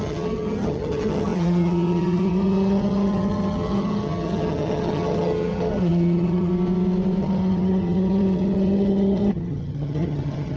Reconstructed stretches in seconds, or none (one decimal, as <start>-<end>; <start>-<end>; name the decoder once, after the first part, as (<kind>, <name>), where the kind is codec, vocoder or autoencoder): 0.0-6.5 (vocoder, HiFi-GAN); 7.2-10.6